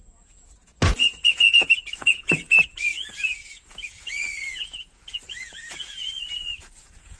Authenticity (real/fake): fake